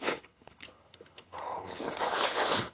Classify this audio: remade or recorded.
remade